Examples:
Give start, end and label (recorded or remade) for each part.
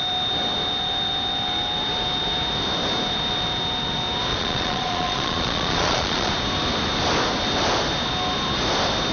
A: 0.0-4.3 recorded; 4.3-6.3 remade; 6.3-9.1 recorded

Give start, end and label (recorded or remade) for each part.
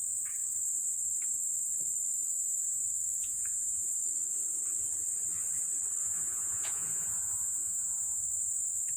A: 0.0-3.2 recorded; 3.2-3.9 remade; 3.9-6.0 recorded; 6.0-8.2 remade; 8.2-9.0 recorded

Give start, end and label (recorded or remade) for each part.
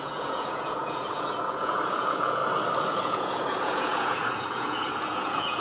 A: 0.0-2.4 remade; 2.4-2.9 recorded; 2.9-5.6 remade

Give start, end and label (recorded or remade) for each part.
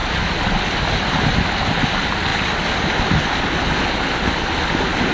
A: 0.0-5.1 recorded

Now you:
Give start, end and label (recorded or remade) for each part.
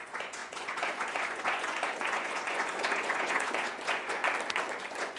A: 0.0-4.2 remade; 4.2-4.8 recorded; 4.8-5.2 remade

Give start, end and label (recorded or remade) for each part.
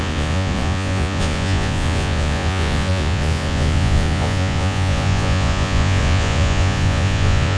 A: 0.0-7.6 remade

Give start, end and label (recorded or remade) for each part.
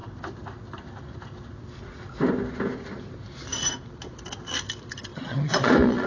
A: 0.0-5.1 recorded; 5.1-6.1 remade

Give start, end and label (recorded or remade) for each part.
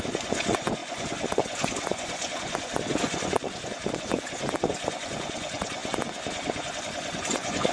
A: 0.0-7.7 remade